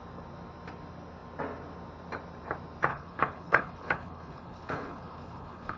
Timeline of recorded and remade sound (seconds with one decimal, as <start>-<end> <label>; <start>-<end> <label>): 0.0-2.9 recorded; 2.9-5.8 remade

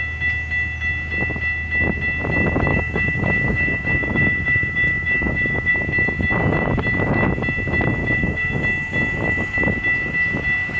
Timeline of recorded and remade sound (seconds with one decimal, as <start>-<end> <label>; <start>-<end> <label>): 0.0-2.7 recorded; 2.7-5.7 remade; 5.7-8.0 recorded; 8.0-8.6 remade; 8.6-10.8 recorded

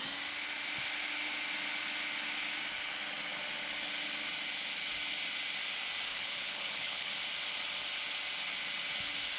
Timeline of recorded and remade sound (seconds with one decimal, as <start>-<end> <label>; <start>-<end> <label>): 0.0-6.1 recorded; 6.1-7.1 remade; 7.1-9.4 recorded